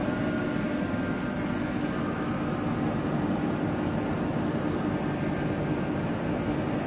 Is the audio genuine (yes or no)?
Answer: yes